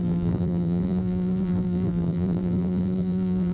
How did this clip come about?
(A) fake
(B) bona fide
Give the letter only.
A